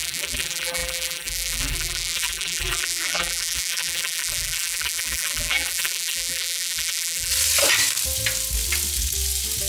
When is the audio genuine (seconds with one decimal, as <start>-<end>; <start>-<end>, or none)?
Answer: 7.3-9.7